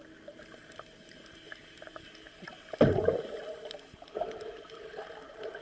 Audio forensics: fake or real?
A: real